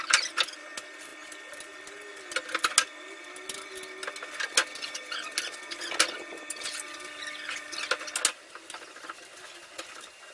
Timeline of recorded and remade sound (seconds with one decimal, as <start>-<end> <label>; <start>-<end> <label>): 0.0-10.3 recorded